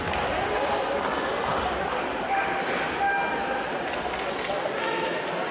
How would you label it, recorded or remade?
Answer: recorded